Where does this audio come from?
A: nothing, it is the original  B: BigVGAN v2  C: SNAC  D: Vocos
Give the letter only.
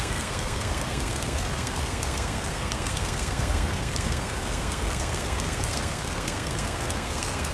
C